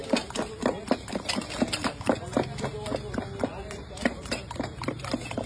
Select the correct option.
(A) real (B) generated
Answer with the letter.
A